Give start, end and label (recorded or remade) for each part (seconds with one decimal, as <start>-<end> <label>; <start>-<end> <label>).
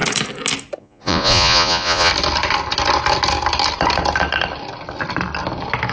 0.0-0.8 recorded; 0.8-2.1 remade; 2.1-5.9 recorded